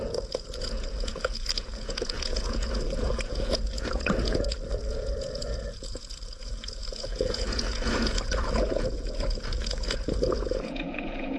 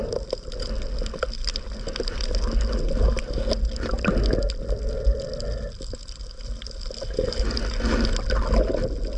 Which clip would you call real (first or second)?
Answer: second